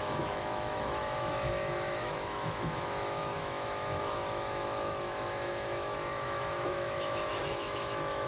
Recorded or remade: remade